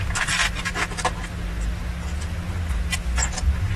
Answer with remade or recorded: recorded